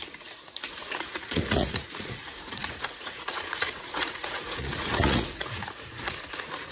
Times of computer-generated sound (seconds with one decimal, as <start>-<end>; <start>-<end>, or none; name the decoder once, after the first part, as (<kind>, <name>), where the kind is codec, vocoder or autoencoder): 0.0-6.7 (vocoder, Vocos)